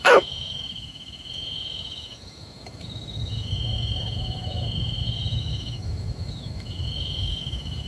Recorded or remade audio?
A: remade